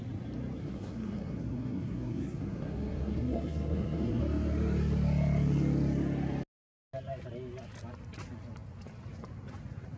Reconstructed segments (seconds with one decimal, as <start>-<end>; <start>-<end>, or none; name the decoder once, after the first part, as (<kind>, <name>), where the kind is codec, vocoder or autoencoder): 0.6-4.2 (codec, SNAC)